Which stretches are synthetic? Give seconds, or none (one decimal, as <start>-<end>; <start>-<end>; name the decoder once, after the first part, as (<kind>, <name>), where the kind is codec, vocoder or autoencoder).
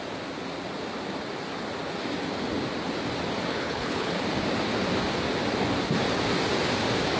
3.5-4.1 (codec, HILCodec)